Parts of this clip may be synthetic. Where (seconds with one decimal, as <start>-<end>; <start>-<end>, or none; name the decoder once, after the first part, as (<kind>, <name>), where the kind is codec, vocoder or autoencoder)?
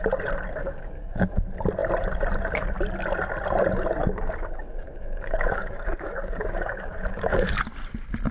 0.6-1.2 (codec, DAC); 4.0-7.6